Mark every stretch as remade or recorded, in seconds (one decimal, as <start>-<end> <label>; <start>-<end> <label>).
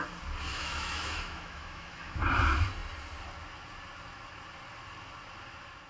0.0-0.5 recorded; 0.5-2.2 remade; 2.2-5.9 recorded